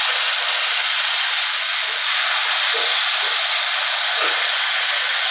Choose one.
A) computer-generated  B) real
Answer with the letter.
B